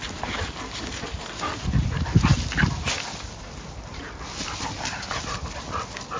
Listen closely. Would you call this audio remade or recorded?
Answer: recorded